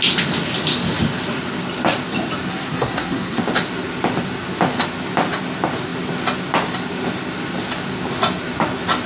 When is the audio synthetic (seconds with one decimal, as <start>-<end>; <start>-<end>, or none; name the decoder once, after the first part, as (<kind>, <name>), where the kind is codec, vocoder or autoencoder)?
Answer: 2.5-3.4 (codec, SNAC)